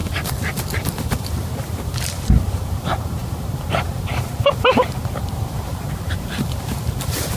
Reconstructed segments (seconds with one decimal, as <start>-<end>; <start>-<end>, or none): 0.9-7.4